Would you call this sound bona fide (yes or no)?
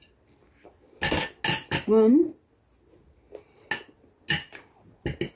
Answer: yes